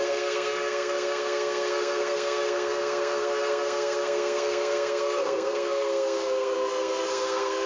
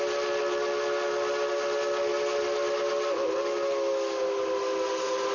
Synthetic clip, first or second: first